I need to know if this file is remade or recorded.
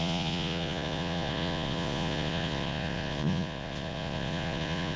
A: remade